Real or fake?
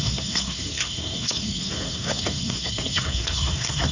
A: fake